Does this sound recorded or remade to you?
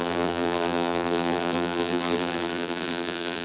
remade